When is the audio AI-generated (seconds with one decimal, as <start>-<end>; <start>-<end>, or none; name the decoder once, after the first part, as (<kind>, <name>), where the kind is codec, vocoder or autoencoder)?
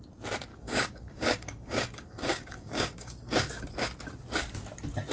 0.5-3.6 (codec, DAC)